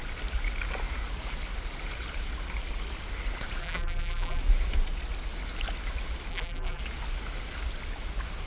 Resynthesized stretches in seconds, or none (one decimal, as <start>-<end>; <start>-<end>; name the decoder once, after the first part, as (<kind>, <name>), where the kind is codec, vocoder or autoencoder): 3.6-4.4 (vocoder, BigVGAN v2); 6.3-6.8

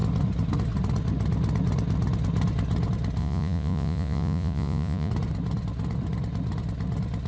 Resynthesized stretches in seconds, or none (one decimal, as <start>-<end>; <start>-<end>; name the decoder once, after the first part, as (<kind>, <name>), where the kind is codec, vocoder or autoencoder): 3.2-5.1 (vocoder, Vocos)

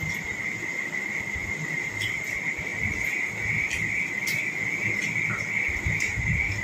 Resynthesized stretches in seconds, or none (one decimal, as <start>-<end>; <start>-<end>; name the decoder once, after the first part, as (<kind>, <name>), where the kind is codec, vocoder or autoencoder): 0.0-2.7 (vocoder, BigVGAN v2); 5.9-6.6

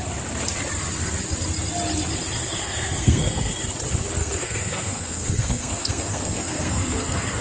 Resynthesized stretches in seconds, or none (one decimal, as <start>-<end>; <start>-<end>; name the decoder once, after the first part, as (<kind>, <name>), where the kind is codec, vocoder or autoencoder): 2.4-3.5 (codec, SNAC); 4.2-7.4